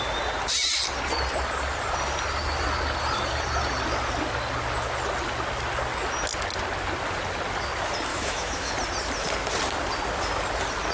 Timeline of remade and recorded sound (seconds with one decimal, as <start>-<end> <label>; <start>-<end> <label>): 0.0-8.1 recorded; 8.1-8.7 remade; 8.7-10.9 recorded